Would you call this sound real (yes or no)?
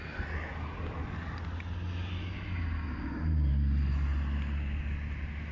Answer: yes